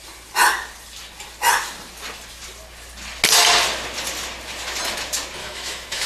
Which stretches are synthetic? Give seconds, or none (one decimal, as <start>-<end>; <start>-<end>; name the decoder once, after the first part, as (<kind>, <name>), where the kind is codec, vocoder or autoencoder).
5.4-6.1 (autoencoder, DAC-VAE)